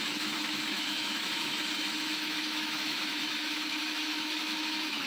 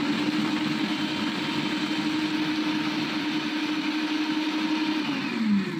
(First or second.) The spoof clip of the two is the first